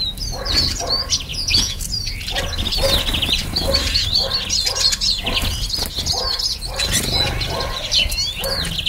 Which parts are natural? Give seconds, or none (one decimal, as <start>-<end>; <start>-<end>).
0.0-1.3; 1.8-8.9